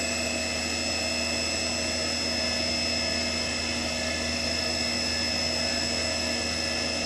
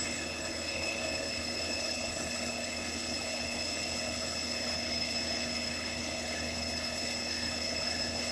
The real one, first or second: first